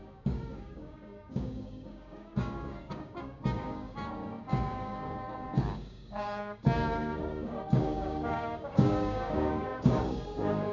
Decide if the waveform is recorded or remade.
remade